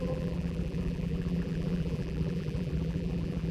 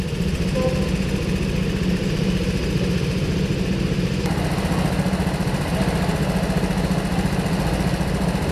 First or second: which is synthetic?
first